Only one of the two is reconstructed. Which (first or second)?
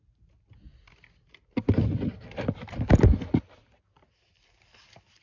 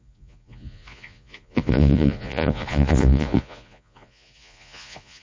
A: second